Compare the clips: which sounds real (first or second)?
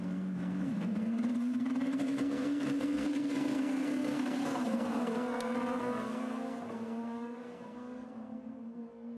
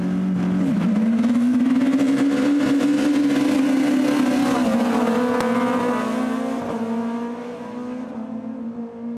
second